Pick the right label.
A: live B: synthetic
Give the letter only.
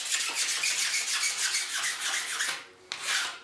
A